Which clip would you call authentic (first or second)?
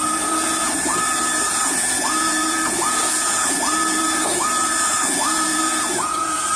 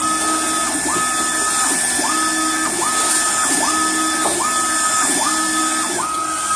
second